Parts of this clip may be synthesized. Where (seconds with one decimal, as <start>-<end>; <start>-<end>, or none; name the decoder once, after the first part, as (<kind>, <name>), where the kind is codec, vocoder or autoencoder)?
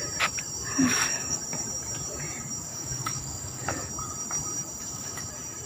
0.8-1.4 (codec, DAC); 2.7-3.9; 4.8-5.3